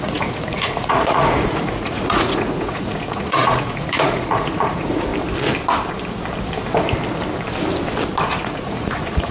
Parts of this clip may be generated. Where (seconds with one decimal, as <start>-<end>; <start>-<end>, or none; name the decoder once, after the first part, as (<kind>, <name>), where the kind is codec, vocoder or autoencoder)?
0.0-5.1 (vocoder, Vocos); 8.2-9.3

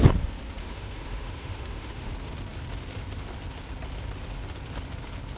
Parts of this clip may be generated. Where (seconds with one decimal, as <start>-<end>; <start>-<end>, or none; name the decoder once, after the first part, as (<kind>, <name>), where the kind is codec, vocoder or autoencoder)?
0.6-2.1 (autoencoder, DAC-VAE)

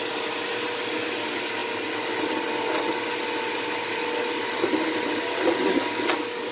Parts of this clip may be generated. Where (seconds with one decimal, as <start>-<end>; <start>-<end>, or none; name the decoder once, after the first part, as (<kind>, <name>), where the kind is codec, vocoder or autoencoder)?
none

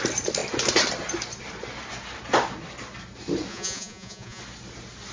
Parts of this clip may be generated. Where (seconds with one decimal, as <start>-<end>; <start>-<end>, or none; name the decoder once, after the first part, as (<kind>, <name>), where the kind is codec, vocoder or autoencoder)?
3.5-4.4 (vocoder, Vocos)

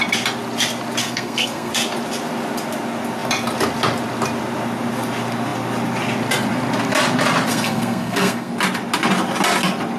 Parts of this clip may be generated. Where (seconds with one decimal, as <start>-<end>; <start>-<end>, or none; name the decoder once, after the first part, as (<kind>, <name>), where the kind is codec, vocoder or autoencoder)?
1.0-1.7 (codec, SNAC); 7.5-8.5

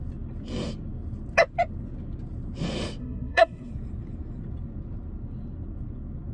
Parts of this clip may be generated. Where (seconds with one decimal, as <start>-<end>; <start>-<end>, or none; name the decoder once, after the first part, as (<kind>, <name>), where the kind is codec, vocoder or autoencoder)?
3.0-3.7 (codec, SNAC)

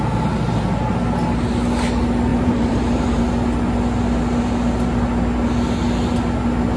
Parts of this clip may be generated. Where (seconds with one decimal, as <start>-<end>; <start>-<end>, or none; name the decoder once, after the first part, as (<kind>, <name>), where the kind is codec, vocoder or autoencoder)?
2.3-3.2 (vocoder, BigVGAN v2)